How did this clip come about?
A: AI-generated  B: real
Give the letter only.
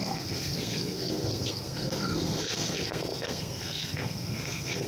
A